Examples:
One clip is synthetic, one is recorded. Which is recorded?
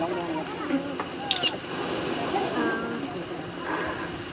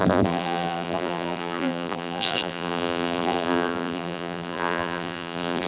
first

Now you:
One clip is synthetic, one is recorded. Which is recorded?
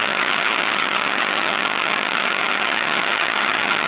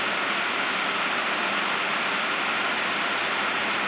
second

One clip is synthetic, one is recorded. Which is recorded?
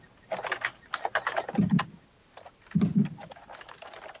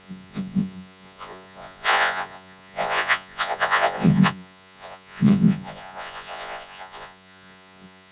first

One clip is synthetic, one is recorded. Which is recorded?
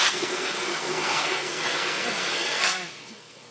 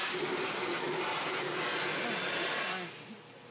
second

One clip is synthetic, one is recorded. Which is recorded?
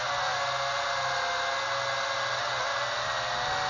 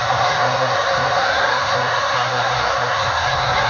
first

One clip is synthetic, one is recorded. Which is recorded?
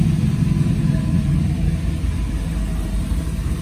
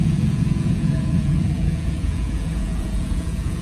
first